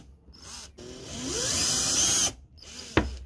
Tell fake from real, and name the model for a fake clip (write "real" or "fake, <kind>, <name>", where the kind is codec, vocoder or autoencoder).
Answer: real